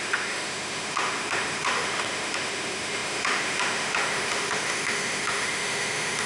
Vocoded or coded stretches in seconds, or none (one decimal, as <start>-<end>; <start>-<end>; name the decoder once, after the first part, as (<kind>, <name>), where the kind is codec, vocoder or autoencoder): 0.0-6.3 (autoencoder, DAC-VAE)